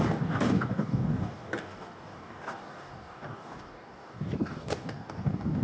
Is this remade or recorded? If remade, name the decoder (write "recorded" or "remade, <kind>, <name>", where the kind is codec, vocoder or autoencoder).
remade, codec, DAC